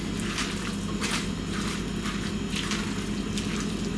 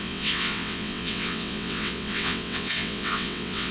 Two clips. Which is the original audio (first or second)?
first